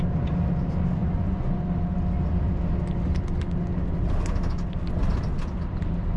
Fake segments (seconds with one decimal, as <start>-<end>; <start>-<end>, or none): 1.0-1.6